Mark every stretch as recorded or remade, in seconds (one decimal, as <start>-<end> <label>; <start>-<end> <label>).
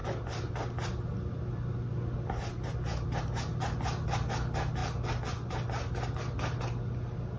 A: 0.0-7.4 recorded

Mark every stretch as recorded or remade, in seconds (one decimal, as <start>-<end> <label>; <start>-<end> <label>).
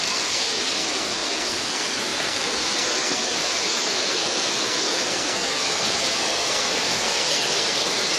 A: 0.0-8.2 remade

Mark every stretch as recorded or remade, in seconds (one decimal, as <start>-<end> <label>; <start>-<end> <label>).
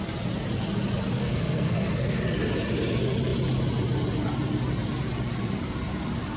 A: 0.0-1.2 recorded; 1.2-2.2 remade; 2.2-6.4 recorded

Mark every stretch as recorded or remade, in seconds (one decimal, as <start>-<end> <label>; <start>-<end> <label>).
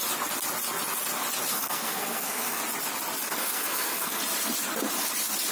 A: 0.0-1.5 recorded; 1.5-2.6 remade; 2.6-3.3 recorded; 3.3-4.2 remade; 4.2-5.5 recorded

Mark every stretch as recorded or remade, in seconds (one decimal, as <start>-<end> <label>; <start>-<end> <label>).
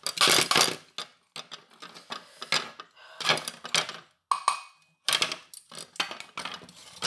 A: 0.0-7.1 recorded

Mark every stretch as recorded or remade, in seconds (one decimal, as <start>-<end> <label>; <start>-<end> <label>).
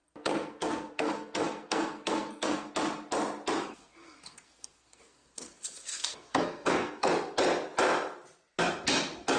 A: 0.0-2.7 remade; 2.7-3.6 recorded; 3.6-7.1 remade; 7.1-9.4 recorded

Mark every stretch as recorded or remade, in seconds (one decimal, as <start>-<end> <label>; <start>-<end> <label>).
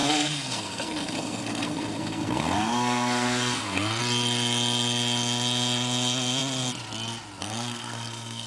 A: 0.0-4.0 remade; 4.0-7.4 recorded; 7.4-8.5 remade